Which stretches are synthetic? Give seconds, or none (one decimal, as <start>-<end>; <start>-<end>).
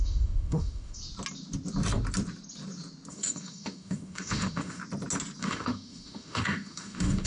0.0-1.0; 3.1-4.8; 5.4-7.3